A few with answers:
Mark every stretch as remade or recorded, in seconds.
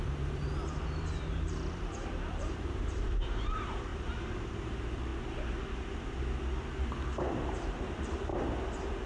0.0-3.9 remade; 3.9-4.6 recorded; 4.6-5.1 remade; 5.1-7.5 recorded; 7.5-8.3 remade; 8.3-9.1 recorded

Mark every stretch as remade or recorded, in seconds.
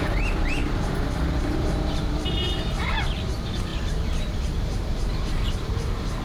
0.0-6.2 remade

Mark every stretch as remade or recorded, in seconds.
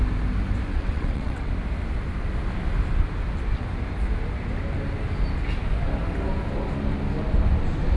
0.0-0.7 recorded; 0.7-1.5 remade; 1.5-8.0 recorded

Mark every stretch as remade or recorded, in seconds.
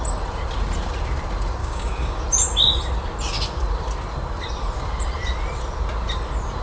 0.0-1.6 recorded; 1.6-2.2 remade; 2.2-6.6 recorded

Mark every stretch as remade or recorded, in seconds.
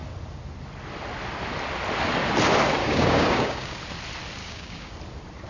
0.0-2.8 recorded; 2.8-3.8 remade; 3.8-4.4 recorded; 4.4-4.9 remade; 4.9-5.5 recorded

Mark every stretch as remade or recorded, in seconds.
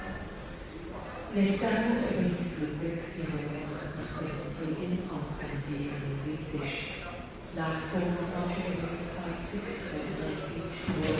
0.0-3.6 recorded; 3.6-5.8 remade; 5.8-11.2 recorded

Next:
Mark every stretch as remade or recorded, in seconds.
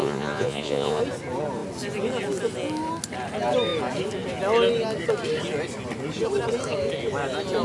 0.0-1.0 remade; 1.0-7.6 recorded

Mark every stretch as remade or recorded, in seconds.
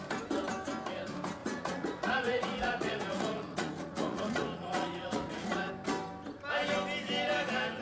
0.0-1.4 recorded; 1.4-5.7 remade; 5.7-7.8 recorded